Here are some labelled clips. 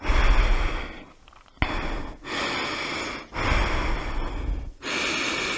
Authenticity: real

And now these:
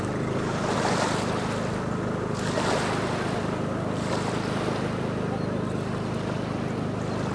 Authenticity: real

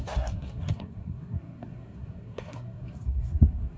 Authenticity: fake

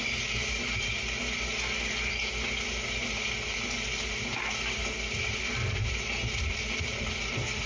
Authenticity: real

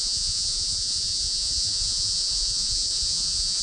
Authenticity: fake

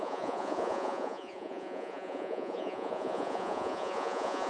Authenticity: fake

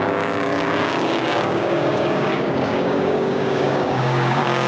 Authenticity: fake